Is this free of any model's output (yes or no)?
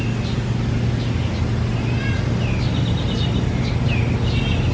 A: yes